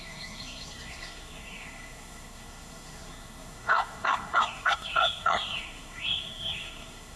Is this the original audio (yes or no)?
no